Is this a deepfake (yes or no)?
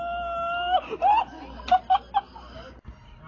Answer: no